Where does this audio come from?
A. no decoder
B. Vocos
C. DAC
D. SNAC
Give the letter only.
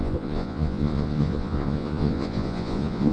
B